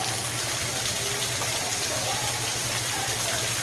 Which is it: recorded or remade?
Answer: recorded